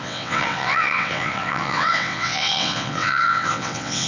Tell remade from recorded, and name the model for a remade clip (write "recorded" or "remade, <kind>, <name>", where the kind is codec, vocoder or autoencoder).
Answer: remade, vocoder, WaveNeXt